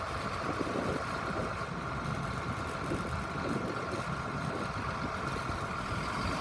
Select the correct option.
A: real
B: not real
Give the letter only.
A